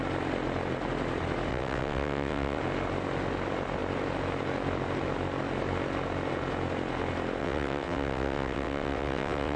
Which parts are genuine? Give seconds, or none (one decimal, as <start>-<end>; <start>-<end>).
0.0-1.5; 2.6-7.4